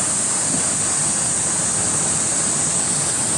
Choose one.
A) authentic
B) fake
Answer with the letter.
A